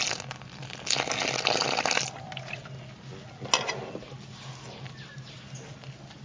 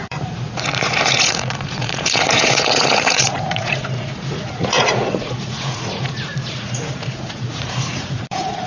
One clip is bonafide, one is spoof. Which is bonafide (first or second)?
first